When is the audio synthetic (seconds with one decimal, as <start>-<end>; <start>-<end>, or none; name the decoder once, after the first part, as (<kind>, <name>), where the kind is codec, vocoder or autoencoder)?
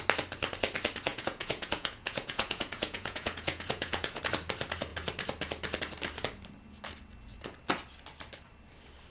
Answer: 1.1-4.2 (vocoder, Vocos)